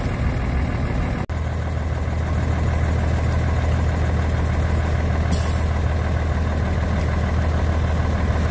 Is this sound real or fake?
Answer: real